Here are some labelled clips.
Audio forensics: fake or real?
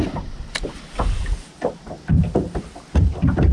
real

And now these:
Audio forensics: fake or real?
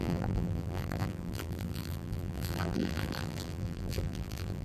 fake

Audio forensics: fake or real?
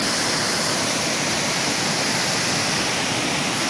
real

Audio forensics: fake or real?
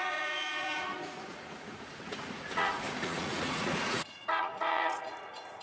fake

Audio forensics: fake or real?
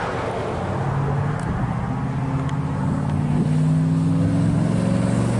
real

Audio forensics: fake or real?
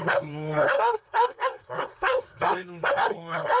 fake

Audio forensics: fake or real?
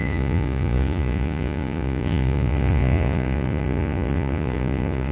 fake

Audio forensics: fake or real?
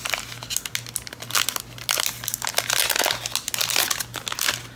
real